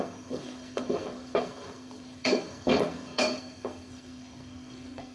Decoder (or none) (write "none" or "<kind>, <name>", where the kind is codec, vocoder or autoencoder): codec, SNAC